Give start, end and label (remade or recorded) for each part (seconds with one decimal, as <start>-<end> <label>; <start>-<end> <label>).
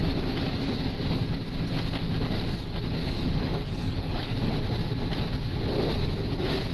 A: 0.0-3.0 recorded; 3.0-4.5 remade; 4.5-6.7 recorded